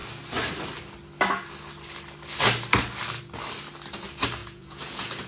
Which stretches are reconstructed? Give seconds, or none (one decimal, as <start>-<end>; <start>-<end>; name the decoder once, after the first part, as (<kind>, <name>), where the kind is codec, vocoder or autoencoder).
4.4-5.3 (vocoder, Vocos)